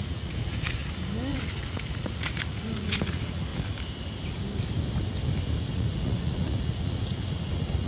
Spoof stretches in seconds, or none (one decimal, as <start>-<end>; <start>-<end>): 0.0-0.8; 1.3-3.5; 5.7-7.9